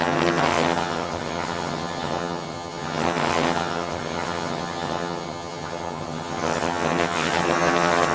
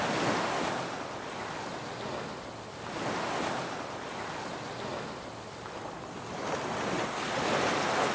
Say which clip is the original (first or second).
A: second